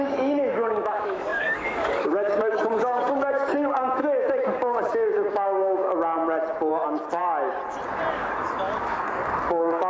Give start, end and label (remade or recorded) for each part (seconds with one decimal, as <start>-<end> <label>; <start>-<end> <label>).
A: 0.0-5.9 remade; 5.9-6.7 recorded; 6.7-7.2 remade; 7.2-8.1 recorded; 8.1-9.9 remade